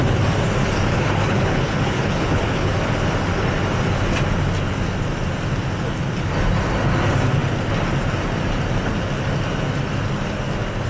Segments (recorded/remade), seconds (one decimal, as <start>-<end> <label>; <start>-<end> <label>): 0.0-0.9 recorded; 0.9-2.7 remade; 2.7-10.9 recorded